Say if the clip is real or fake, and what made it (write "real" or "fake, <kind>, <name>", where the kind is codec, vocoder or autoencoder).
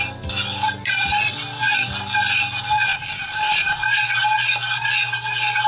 real